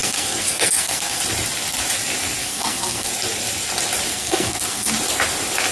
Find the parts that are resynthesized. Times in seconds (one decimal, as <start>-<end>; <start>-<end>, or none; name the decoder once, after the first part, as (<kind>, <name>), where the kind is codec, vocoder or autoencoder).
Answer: 0.0-1.2 (codec, SNAC); 2.4-3.1; 4.1-4.9